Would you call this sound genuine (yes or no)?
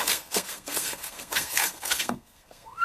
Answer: no